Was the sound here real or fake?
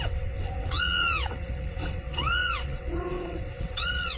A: fake